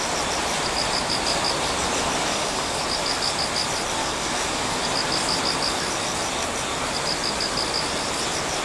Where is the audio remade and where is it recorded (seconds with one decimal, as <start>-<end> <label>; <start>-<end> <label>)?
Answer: 0.0-2.3 recorded; 2.3-2.8 remade; 2.8-4.0 recorded; 4.0-4.7 remade; 4.7-8.6 recorded